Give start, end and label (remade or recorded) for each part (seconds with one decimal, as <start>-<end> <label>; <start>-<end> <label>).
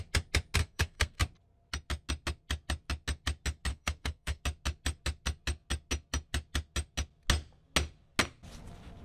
0.0-0.6 recorded; 0.6-1.2 remade; 1.2-3.7 recorded; 3.7-4.4 remade; 4.4-9.0 recorded